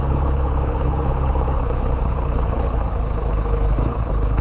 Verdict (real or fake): fake